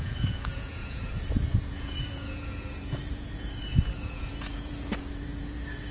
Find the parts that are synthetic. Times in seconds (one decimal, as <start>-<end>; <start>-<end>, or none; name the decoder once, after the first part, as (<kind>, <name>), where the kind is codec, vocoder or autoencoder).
0.0-5.9 (vocoder, Vocos)